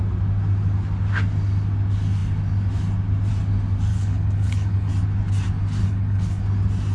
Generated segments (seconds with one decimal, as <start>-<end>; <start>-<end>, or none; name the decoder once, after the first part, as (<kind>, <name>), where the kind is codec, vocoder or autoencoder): 3.9-4.9 (codec, HILCodec); 5.8-6.4